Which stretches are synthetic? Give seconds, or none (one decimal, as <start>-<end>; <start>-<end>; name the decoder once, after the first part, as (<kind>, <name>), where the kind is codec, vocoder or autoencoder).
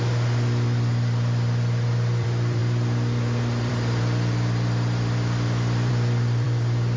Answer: 0.0-7.0 (vocoder, BigVGAN v2)